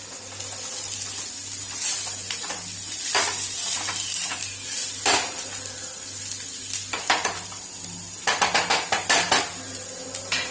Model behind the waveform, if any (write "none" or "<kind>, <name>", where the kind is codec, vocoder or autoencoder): none